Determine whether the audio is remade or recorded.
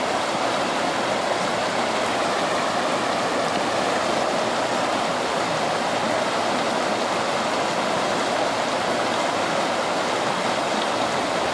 recorded